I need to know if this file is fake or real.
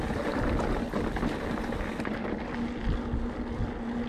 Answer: real